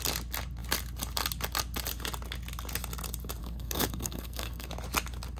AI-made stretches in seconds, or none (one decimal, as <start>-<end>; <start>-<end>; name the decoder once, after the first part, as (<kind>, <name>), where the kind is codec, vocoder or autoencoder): 3.4-4.7 (codec, SNAC)